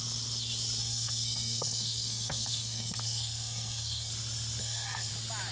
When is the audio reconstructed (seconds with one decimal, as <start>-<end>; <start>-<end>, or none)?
0.8-4.1; 4.6-5.1